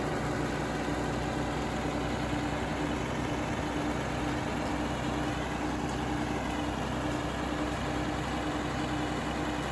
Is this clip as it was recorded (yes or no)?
yes